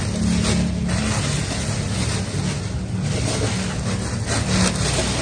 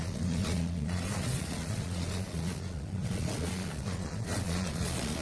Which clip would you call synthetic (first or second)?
second